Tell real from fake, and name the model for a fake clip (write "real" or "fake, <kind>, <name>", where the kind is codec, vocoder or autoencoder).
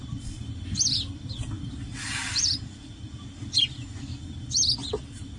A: real